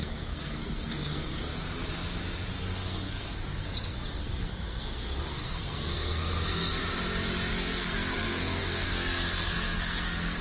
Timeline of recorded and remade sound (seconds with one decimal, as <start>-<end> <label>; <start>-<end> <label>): 0.0-1.5 remade; 1.5-2.6 recorded; 2.6-6.8 remade; 6.8-7.5 recorded; 7.5-10.4 remade